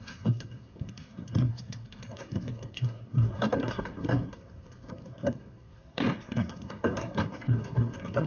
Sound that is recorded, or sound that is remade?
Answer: remade